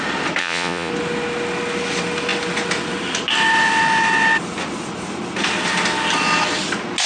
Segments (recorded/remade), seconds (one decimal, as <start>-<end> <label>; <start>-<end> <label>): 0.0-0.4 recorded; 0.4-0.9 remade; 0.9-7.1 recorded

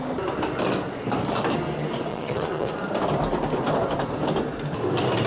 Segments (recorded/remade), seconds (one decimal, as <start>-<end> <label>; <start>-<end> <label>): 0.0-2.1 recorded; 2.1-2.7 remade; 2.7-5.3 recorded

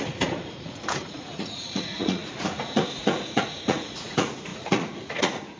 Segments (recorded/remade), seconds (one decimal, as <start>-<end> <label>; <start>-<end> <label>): 0.0-5.6 remade

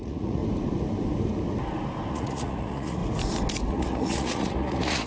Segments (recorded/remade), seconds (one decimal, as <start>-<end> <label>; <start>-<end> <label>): 0.0-0.4 remade; 0.4-2.1 recorded; 2.1-3.0 remade; 3.0-3.7 recorded; 3.7-5.1 remade